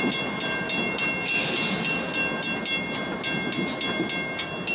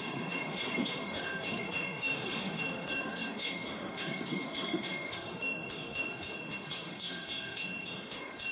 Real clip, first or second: first